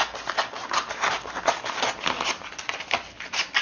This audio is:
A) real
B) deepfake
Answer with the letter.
A